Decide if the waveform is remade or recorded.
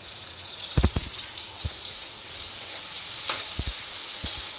remade